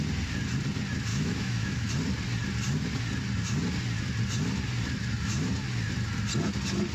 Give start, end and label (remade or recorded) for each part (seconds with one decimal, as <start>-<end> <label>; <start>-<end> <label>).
0.0-1.1 recorded; 1.1-1.9 remade; 1.9-6.9 recorded